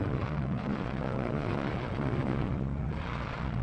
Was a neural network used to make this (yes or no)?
yes